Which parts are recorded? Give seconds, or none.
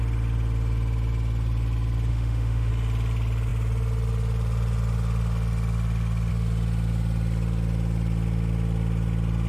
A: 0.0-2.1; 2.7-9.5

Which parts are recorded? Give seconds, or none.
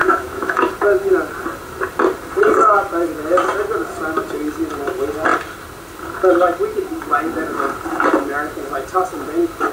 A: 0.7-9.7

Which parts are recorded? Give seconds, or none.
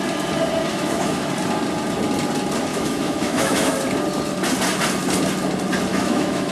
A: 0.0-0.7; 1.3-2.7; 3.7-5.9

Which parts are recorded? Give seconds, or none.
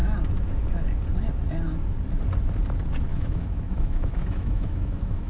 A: 0.0-3.1